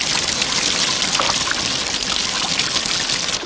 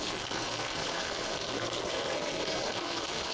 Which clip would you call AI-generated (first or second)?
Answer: second